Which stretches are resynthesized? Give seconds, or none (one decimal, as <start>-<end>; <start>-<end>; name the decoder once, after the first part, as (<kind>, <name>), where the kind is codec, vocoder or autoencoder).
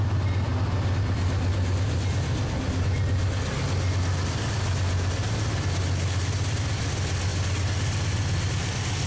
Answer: 0.5-2.5 (vocoder, BigVGAN v2)